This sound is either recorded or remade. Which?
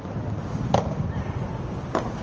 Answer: recorded